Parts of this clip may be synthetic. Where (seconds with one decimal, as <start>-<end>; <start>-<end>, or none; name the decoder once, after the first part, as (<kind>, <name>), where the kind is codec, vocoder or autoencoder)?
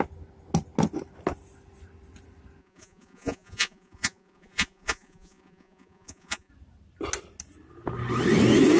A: 2.6-6.5 (vocoder, Vocos)